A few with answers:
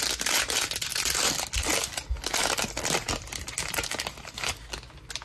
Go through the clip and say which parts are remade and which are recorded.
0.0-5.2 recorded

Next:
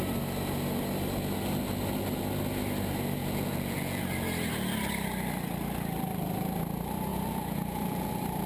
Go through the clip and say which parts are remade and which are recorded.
0.0-3.2 recorded; 3.2-4.0 remade; 4.0-7.1 recorded; 7.1-8.1 remade; 8.1-8.5 recorded

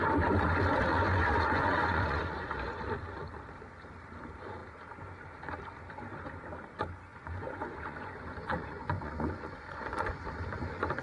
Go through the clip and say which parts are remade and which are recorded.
0.0-0.9 recorded; 0.9-2.5 remade; 2.5-7.1 recorded; 7.1-10.2 remade; 10.2-11.0 recorded

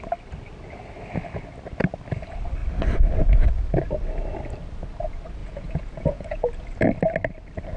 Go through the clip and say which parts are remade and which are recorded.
0.0-5.4 recorded; 5.4-6.5 remade; 6.5-7.8 recorded

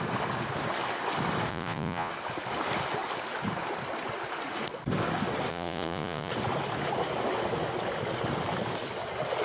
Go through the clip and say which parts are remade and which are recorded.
0.0-1.5 recorded; 1.5-2.1 remade; 2.1-5.5 recorded; 5.5-6.3 remade; 6.3-9.4 recorded

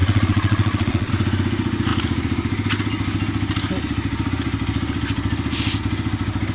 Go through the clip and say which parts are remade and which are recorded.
0.0-1.1 remade; 1.1-6.5 recorded

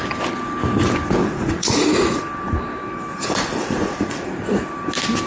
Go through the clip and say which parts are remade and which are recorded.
0.0-1.2 recorded; 1.2-2.2 remade; 2.2-3.1 recorded; 3.1-4.4 remade; 4.4-5.3 recorded

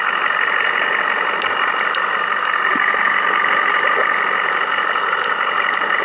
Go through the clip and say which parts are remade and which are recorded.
0.0-6.0 recorded